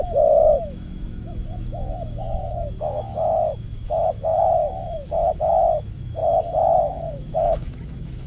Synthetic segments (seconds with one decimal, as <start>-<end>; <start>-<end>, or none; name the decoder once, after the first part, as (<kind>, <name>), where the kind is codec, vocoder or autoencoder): 0.0-6.2 (autoencoder, DAC-VAE); 6.8-8.3